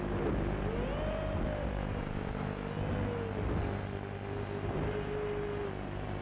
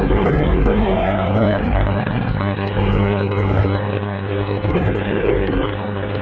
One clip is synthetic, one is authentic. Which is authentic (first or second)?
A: first